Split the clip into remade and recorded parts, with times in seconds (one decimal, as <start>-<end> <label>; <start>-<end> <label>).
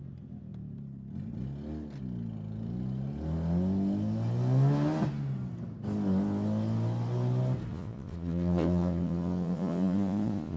0.0-7.7 recorded; 7.7-10.6 remade